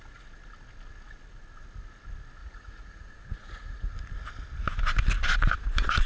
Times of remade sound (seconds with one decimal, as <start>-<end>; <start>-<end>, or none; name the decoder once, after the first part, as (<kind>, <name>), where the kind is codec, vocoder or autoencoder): 2.4-3.9 (vocoder, Vocos)